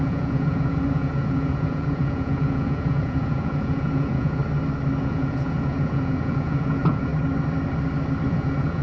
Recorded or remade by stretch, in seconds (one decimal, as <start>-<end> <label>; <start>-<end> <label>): 0.0-4.4 remade; 4.4-5.0 recorded; 5.0-7.1 remade; 7.1-8.3 recorded; 8.3-8.8 remade